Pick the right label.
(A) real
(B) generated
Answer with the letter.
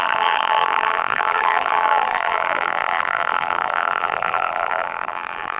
B